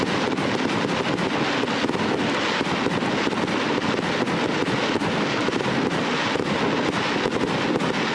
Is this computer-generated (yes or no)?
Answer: no